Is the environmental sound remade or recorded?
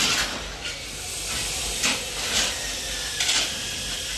recorded